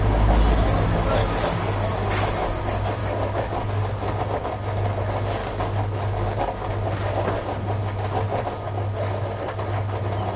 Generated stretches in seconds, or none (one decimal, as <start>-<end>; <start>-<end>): 1.2-1.9; 3.0-4.2; 5.4-6.7

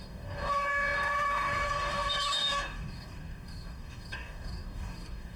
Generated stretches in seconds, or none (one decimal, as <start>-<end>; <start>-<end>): 0.0-5.4

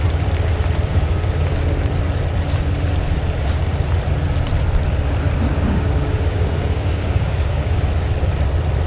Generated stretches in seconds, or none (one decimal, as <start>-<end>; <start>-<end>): 0.9-1.5; 5.5-7.8